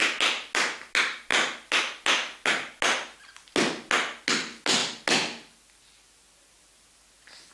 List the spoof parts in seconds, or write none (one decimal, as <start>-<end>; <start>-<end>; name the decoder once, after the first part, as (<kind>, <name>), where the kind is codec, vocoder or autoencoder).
none